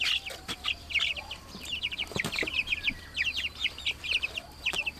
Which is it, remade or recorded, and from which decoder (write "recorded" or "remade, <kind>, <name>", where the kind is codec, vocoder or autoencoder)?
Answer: remade, vocoder, BigVGAN v2